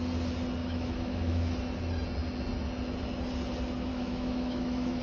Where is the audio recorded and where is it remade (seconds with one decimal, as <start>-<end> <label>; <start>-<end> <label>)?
0.0-0.6 recorded; 0.6-1.5 remade; 1.5-3.9 recorded; 3.9-5.0 remade